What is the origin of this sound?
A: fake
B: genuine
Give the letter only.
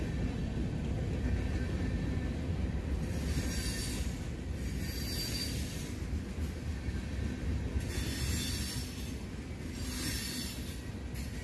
B